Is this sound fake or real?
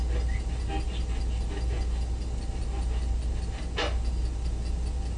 real